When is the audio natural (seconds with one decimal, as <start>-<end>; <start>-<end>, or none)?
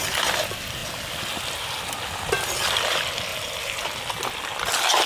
0.0-5.1